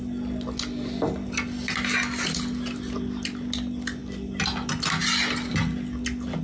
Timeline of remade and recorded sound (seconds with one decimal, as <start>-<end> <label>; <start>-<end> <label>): 0.0-6.4 recorded